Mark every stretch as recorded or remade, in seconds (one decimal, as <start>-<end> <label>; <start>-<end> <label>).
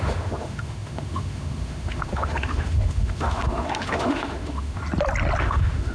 0.0-4.8 remade; 4.8-5.4 recorded; 5.4-5.9 remade